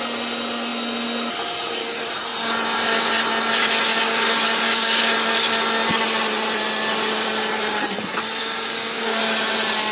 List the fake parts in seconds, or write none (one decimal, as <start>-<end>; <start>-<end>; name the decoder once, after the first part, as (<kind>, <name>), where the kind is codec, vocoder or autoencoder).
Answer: 3.9-5.0 (codec, DAC); 8.4-9.2